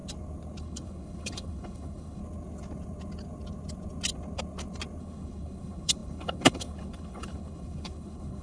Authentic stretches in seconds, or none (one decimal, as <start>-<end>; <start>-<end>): 0.0-0.6; 2.2-5.0